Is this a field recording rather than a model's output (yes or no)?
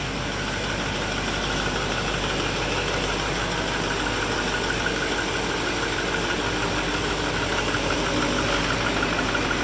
yes